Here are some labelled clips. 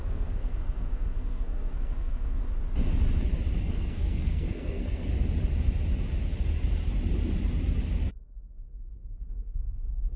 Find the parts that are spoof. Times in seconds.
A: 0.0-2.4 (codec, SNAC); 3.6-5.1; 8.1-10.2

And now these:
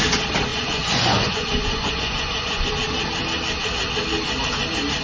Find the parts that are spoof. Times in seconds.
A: 0.5-2.7 (vocoder, Vocos)

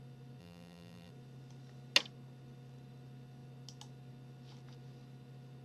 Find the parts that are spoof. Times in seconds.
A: 0.4-1.1 (vocoder, BigVGAN v2)

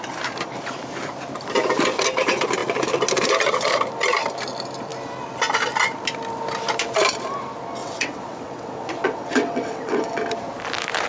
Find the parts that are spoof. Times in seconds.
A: 7.8-10.2 (vocoder, WaveNeXt)

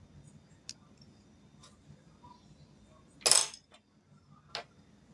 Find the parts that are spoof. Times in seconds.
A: none